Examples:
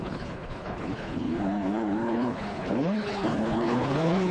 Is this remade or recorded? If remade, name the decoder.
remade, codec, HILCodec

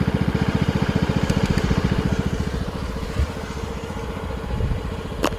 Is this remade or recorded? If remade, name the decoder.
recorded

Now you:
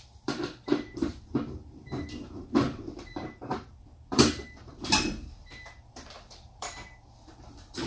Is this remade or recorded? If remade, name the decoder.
remade, vocoder, BigVGAN v2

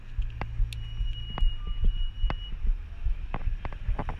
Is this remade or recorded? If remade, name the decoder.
recorded